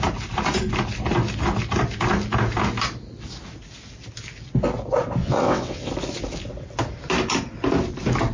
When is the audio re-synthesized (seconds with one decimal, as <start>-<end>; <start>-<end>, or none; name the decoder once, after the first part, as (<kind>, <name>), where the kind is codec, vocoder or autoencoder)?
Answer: 5.2-5.9 (vocoder, WaveNeXt)